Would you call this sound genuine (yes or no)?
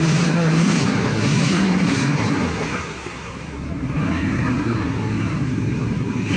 no